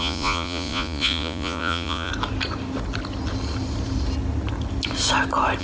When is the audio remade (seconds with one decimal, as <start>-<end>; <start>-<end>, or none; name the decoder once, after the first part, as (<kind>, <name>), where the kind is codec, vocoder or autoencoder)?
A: 0.0-2.1 (vocoder, Vocos)